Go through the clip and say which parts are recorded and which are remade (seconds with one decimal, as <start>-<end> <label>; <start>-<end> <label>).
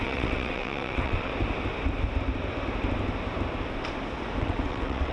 0.0-1.3 remade; 1.3-4.4 recorded; 4.4-5.1 remade